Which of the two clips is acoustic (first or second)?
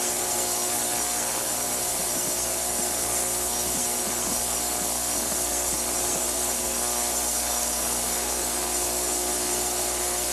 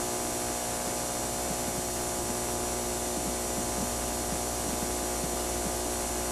second